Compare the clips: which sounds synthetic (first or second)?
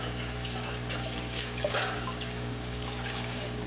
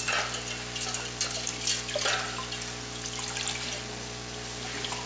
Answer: first